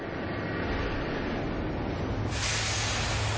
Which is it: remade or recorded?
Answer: recorded